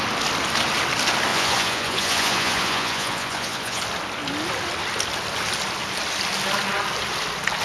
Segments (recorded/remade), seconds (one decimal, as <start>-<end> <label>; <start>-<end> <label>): 0.0-1.3 recorded; 1.3-3.8 remade; 3.8-7.6 recorded